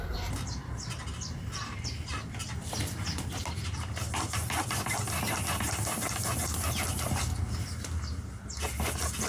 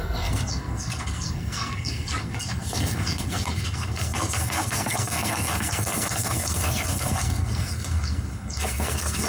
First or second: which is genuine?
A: first